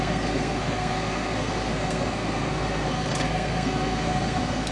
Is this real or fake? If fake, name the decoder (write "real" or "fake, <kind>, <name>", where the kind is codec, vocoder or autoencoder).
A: fake, codec, SNAC